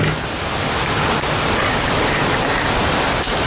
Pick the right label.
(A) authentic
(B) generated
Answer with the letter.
A